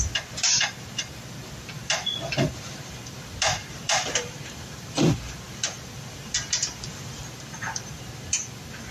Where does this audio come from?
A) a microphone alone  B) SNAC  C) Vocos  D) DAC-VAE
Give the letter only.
A